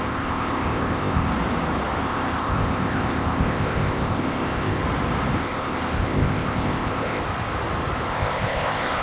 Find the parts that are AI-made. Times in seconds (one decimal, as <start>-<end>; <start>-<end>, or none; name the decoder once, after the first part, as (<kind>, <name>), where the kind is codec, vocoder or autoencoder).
0.0-1.3 (codec, ZipCodec); 2.0-4.8; 5.4-7.2; 8.1-9.0